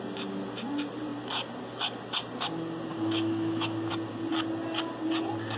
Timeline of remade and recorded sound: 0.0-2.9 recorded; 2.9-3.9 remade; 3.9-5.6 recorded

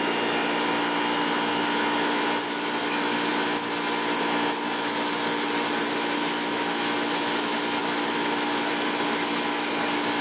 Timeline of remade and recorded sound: 0.0-10.2 recorded